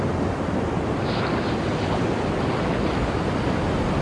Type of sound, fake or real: real